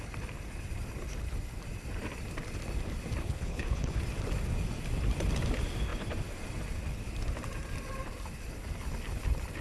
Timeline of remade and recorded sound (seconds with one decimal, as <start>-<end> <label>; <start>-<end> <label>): 0.0-3.2 recorded; 3.2-4.0 remade; 4.0-9.6 recorded